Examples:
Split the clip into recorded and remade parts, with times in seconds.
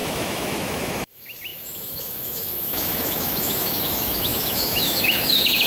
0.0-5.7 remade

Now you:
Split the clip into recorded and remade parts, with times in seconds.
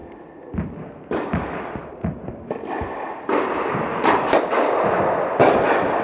0.0-6.0 recorded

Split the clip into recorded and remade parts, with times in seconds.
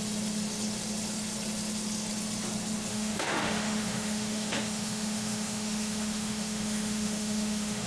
0.0-2.9 recorded; 2.9-7.9 remade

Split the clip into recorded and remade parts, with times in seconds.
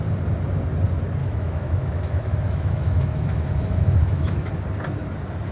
0.0-1.2 recorded; 1.2-4.5 remade; 4.5-5.5 recorded